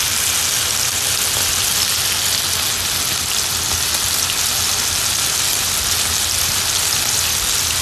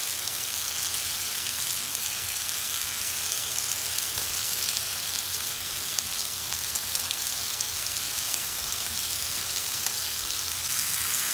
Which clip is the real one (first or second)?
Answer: first